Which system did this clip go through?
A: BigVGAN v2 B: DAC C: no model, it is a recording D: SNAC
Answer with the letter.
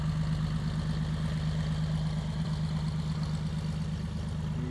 C